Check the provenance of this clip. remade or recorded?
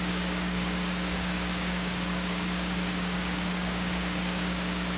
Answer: remade